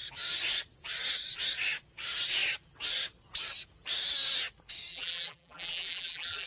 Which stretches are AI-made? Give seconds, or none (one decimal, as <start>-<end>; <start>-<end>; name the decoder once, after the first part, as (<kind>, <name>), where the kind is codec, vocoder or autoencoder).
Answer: 4.9-6.5 (vocoder, BigVGAN v2)